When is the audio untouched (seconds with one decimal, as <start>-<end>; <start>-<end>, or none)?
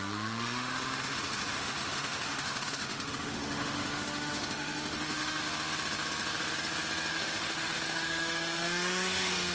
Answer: 5.4-7.1